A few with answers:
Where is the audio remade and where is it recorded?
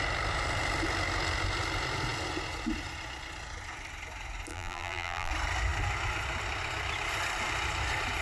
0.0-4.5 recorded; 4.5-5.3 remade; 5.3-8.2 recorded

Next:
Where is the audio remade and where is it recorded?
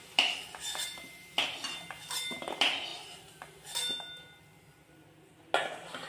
0.0-6.1 recorded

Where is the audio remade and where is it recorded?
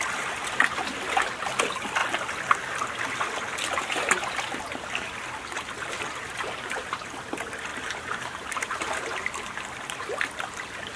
0.0-7.7 recorded; 7.7-8.7 remade; 8.7-11.0 recorded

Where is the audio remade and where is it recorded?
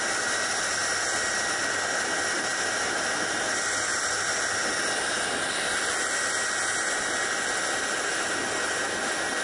0.0-9.4 recorded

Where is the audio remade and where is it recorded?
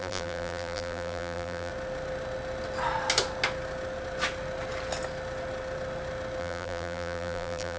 0.0-1.7 remade; 1.7-6.4 recorded; 6.4-7.8 remade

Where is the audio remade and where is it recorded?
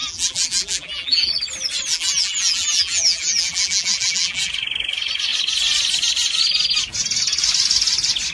0.0-1.3 remade; 1.3-1.9 recorded; 1.9-4.5 remade; 4.5-8.3 recorded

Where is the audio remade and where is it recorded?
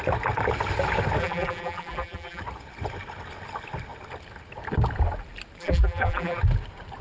0.0-1.2 recorded; 1.2-2.4 remade; 2.4-5.6 recorded; 5.6-6.4 remade; 6.4-7.0 recorded